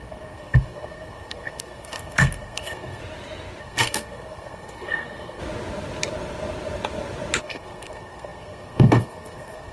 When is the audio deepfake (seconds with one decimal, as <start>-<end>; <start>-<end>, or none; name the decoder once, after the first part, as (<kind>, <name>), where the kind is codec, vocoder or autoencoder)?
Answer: 0.0-3.0 (codec, SNAC); 3.6-5.4; 7.4-9.7